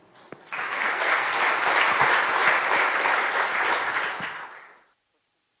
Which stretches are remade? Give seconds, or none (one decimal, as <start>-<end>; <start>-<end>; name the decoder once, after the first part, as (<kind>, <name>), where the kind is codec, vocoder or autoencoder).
0.7-1.3 (codec, SNAC)